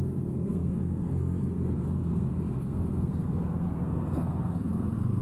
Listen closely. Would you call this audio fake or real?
fake